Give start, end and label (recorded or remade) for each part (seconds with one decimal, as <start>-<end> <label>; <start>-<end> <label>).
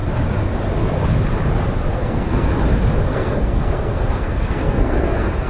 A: 0.0-1.9 recorded; 1.9-2.5 remade; 2.5-3.1 recorded; 3.1-5.5 remade